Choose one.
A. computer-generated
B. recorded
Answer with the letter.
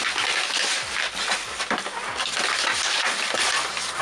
B